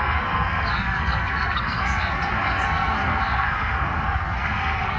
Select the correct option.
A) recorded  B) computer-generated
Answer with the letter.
B